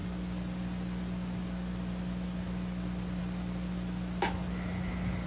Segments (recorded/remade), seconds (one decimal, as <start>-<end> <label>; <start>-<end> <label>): 0.0-5.3 recorded